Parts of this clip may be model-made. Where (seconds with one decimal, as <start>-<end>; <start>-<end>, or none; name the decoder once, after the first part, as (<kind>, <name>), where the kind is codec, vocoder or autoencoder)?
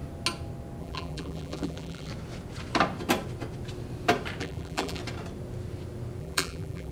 0.8-2.1 (vocoder, BigVGAN v2); 4.4-5.0; 6.2-6.9